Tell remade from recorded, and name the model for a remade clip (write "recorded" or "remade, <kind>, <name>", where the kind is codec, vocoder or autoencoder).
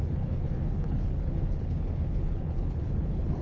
remade, codec, HILCodec